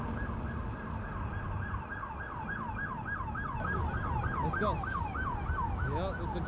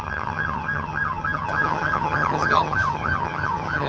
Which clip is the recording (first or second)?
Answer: first